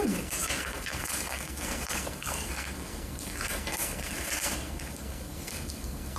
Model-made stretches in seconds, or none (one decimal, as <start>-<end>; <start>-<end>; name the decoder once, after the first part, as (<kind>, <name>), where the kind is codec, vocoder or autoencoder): 0.0-6.2 (codec, SNAC)